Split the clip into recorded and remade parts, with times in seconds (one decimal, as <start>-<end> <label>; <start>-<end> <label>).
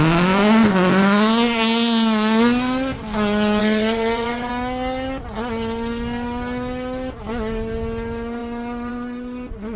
0.0-3.6 recorded; 3.6-4.5 remade; 4.5-9.8 recorded